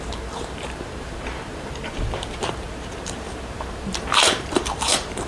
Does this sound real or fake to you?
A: fake